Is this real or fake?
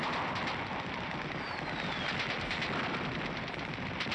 real